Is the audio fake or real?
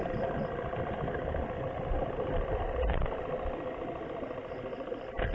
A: real